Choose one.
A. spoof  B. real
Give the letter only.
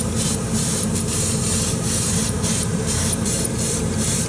A